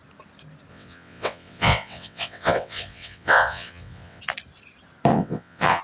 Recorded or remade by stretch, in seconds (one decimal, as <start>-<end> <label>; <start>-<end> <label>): 0.0-0.7 recorded; 0.7-4.2 remade; 4.2-5.1 recorded; 5.1-5.8 remade